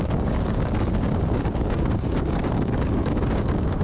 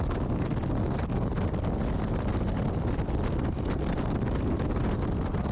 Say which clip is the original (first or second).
second